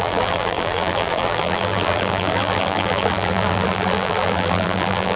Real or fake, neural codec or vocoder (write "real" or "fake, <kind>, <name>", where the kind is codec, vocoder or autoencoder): fake, vocoder, BigVGAN v2